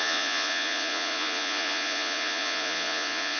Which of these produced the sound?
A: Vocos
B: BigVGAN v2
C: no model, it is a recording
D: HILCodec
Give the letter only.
A